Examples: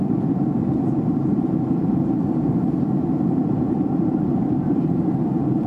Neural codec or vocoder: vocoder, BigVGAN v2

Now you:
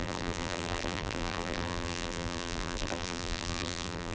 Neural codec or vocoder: vocoder, BigVGAN v2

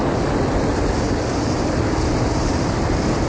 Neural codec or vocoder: none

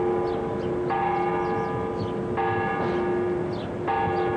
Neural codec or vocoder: none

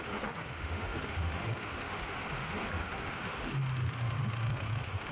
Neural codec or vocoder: autoencoder, DAC-VAE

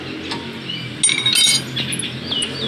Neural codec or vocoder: none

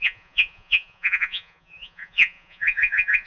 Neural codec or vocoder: vocoder, Vocos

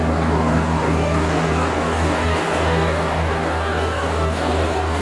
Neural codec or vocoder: codec, DAC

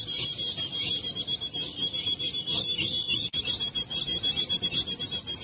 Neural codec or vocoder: none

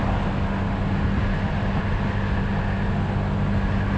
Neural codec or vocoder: none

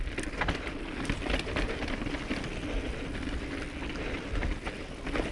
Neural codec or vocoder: none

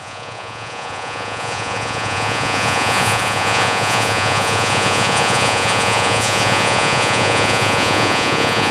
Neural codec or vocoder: vocoder, Vocos